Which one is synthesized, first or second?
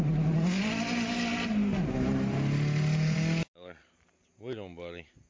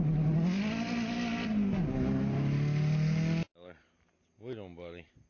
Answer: first